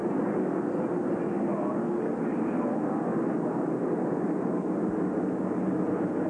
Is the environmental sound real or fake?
real